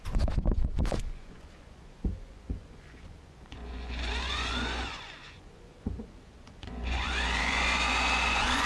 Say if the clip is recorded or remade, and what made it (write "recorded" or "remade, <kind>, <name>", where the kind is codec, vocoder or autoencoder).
remade, vocoder, Vocos